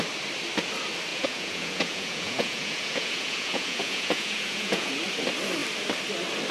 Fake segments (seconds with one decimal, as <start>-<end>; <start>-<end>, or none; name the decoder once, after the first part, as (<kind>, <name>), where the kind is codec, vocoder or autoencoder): 1.1-4.9 (vocoder, Vocos)